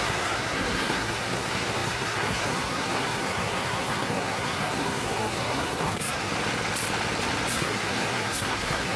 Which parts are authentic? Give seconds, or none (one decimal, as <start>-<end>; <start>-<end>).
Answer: 6.3-7.5